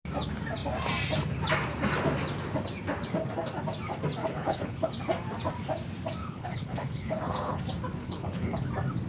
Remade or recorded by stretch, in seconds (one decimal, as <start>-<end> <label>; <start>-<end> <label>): 0.0-4.2 recorded; 4.2-4.9 remade; 4.9-6.2 recorded; 6.2-7.6 remade; 7.6-8.0 recorded; 8.0-8.7 remade; 8.7-9.1 recorded